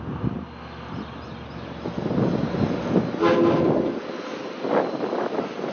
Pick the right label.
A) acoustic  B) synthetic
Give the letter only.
A